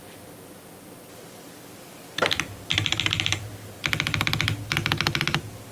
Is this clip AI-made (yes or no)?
no